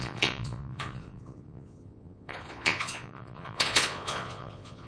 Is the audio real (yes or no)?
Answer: no